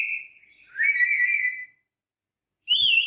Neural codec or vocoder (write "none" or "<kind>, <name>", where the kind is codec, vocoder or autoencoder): none